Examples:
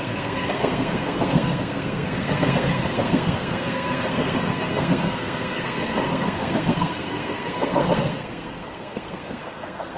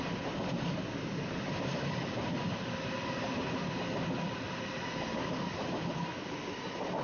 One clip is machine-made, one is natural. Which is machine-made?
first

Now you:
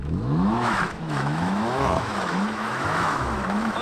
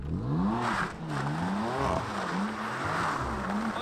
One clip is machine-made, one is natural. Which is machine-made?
first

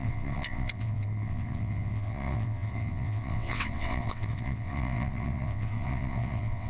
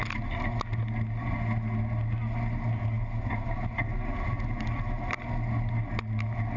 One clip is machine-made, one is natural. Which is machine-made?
first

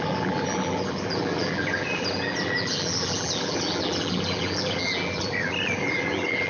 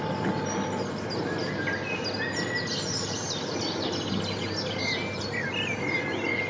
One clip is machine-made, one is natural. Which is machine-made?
first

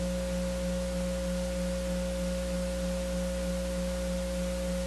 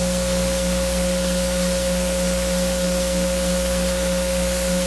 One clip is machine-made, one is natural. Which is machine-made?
second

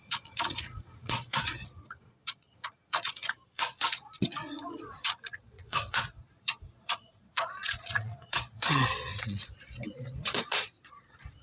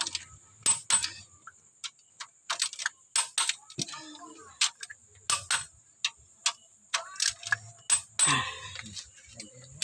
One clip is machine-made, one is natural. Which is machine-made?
first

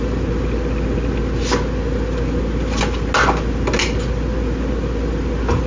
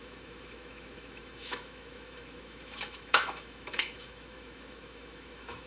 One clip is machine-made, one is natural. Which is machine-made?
second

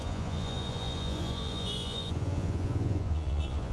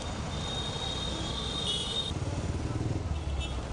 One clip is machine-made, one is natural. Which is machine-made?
first